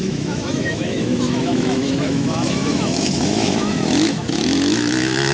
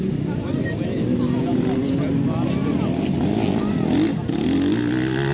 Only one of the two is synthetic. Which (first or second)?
first